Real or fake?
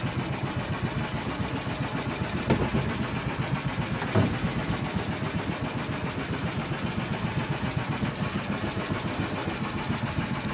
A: real